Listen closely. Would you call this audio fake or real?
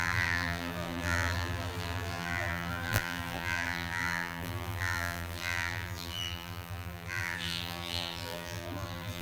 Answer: fake